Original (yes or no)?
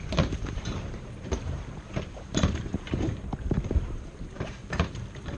no